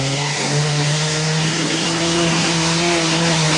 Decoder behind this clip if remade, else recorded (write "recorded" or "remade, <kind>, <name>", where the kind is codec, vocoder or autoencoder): remade, codec, SNAC